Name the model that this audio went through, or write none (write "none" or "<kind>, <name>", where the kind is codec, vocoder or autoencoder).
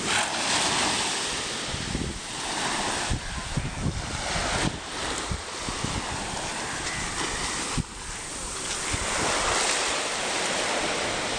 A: none